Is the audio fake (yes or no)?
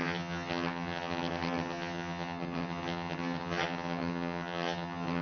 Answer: yes